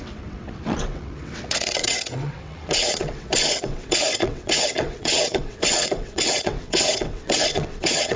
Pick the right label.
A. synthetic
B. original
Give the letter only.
A